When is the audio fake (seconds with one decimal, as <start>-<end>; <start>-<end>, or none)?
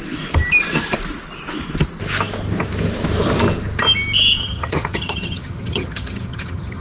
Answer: 4.4-6.8